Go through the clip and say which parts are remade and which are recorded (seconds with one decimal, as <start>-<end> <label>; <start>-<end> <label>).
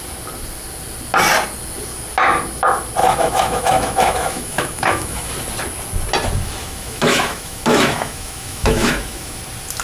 0.0-3.0 recorded; 3.0-5.3 remade; 5.3-6.6 recorded; 6.6-9.4 remade; 9.4-9.8 recorded